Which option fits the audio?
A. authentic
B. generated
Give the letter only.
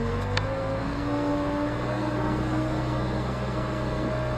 B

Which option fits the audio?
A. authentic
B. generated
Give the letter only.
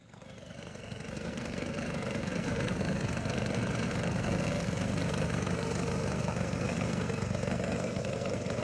B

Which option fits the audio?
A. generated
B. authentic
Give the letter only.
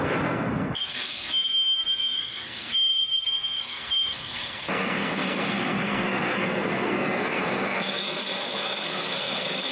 A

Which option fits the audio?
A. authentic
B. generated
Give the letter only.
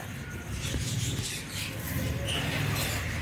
A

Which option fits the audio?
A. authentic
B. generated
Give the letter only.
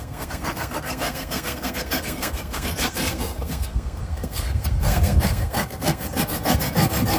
B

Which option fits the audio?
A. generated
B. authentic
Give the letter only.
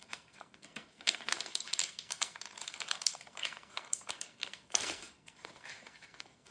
A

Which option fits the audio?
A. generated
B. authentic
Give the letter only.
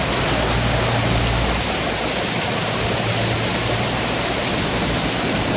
B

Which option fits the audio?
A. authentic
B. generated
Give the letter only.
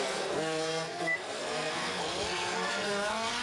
B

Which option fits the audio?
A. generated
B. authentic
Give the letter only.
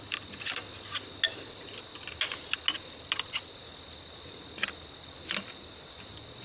B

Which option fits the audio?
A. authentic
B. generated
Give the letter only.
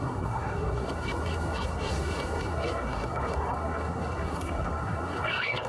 B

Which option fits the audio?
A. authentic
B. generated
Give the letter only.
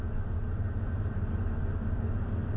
A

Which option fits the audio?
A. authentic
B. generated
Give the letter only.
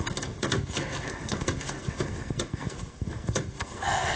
B